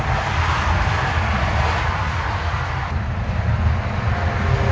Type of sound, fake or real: real